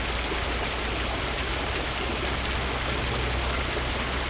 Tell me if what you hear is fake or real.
real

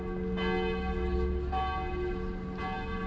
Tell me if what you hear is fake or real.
real